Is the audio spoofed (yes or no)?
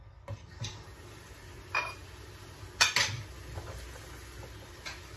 no